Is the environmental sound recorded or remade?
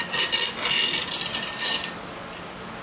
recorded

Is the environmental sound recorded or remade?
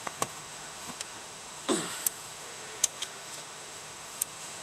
remade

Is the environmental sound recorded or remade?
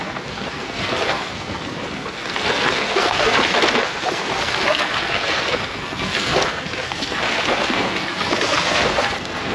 remade